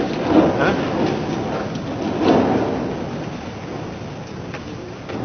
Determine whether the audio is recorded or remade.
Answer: recorded